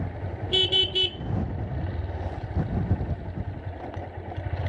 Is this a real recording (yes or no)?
yes